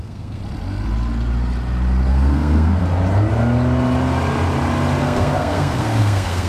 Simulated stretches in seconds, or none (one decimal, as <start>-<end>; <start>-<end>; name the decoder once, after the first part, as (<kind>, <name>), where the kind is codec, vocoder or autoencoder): 0.0-0.4 (codec, SNAC); 2.1-2.8; 5.0-6.5